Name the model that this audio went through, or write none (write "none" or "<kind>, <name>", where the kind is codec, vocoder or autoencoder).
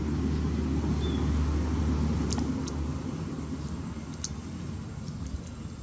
none